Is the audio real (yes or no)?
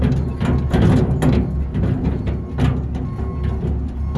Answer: yes